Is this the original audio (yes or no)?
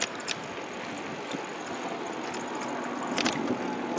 yes